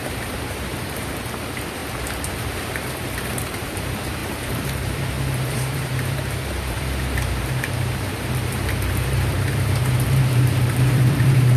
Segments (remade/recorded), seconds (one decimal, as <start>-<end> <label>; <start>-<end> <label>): 0.0-11.6 remade